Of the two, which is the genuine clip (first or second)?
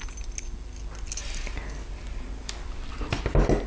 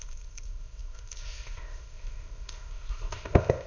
first